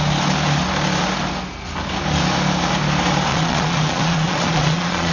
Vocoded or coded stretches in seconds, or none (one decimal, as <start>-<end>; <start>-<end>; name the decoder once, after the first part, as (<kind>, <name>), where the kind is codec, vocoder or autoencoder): 3.3-5.1 (vocoder, Vocos)